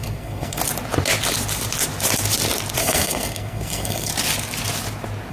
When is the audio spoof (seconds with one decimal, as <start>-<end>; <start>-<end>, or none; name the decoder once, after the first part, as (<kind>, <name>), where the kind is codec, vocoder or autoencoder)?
0.0-0.6 (codec, SNAC); 2.8-4.1